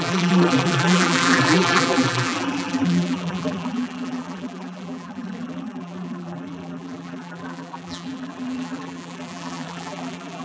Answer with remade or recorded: remade